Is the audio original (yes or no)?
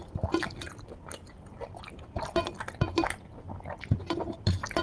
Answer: yes